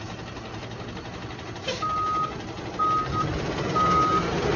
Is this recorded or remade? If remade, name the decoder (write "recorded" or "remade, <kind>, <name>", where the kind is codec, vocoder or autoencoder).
recorded